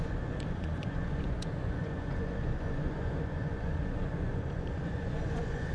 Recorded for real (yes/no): no